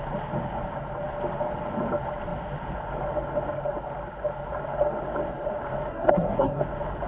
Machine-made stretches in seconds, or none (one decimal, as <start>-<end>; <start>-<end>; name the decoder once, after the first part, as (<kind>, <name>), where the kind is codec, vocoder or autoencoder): 5.9-6.6 (codec, SNAC)